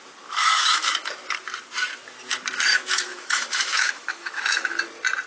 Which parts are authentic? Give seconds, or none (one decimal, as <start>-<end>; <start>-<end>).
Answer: 0.0-0.4; 1.1-2.7; 4.8-5.3